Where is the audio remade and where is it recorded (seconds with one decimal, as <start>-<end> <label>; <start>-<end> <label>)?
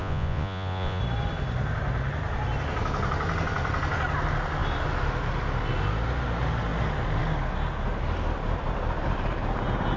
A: 0.0-1.0 remade; 1.0-10.0 recorded